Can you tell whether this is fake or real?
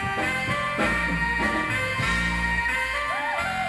real